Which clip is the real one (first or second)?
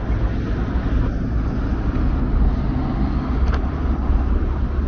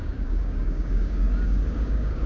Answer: first